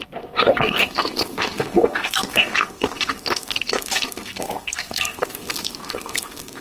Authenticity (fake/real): fake